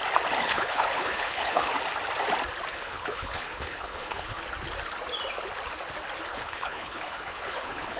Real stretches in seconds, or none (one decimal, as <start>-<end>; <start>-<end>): 0.0-0.4; 1.7-2.7; 4.4-6.3

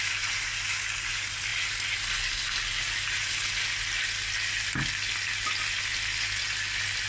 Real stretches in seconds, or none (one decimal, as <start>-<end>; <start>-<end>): 0.0-7.1